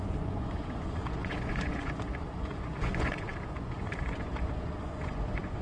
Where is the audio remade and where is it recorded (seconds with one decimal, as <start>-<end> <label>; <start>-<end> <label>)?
0.0-5.6 remade